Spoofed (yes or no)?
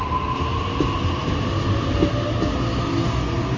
no